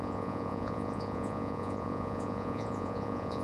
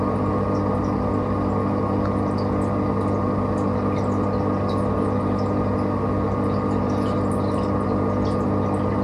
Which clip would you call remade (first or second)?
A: first